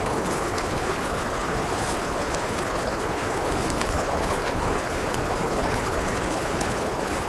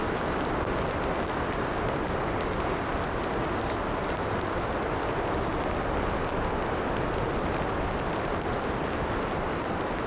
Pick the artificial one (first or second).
first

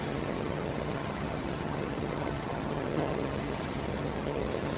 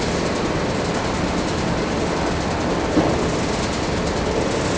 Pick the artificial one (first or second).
first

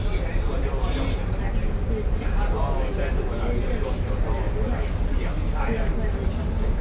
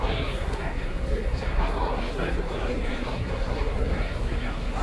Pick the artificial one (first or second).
second